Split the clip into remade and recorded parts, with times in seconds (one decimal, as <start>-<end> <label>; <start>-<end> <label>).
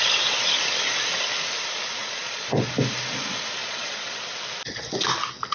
0.0-2.0 recorded; 2.0-2.7 remade; 2.7-3.6 recorded; 3.6-4.3 remade; 4.3-5.5 recorded